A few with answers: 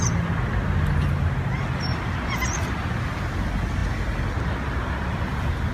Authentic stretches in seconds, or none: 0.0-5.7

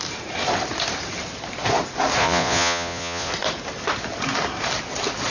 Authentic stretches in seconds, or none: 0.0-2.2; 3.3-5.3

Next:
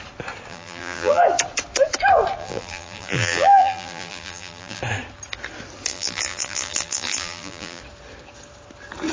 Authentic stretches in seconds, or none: 0.0-0.5; 1.2-2.4; 4.8-5.9; 7.8-9.1